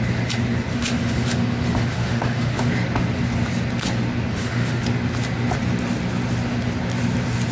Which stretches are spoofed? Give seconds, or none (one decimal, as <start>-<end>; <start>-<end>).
0.7-2.7; 4.3-4.8